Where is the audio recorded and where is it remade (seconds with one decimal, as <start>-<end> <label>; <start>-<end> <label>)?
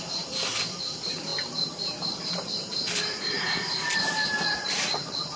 0.0-5.4 remade